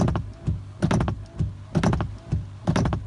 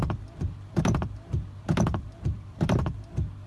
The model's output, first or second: second